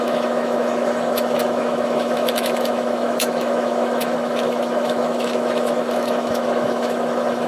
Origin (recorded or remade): remade